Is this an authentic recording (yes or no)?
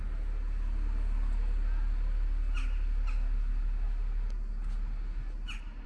yes